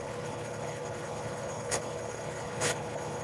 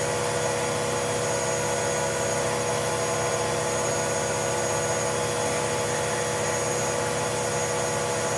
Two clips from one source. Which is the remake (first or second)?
first